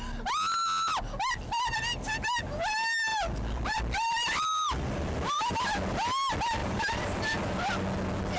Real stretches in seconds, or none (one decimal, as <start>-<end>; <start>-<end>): 0.0-3.1; 5.5-6.6; 7.7-8.4